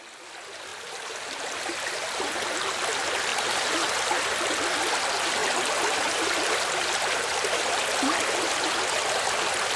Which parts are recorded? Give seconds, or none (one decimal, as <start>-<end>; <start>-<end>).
0.0-0.7; 2.1-3.3; 3.9-5.4; 6.3-9.8